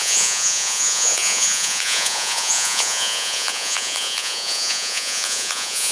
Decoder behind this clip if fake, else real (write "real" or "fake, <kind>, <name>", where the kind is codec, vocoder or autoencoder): fake, vocoder, Vocos